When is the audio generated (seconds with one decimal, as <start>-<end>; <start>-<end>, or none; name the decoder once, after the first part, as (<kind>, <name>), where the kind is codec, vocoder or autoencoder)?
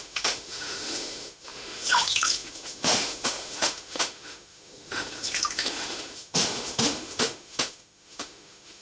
0.0-8.8 (autoencoder, DAC-VAE)